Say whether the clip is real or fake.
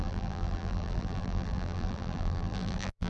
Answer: fake